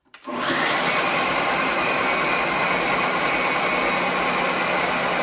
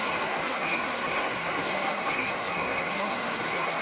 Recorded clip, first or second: first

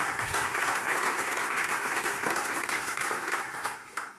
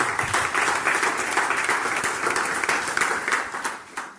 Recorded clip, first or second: second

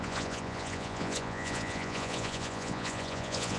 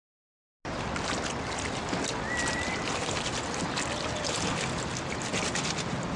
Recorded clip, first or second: second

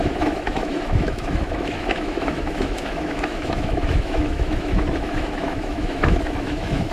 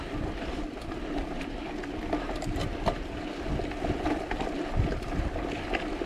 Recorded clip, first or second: second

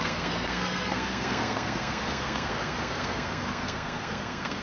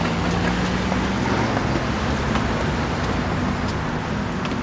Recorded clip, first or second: second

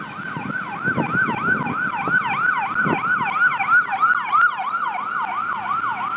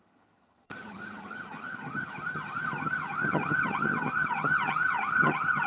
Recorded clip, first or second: first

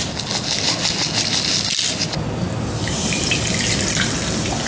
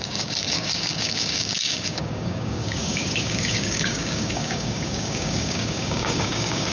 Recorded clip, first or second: first